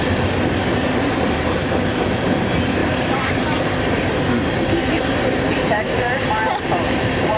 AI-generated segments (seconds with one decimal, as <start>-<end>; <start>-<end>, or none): 0.7-1.5; 2.8-7.0